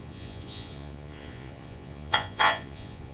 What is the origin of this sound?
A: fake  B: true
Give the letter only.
A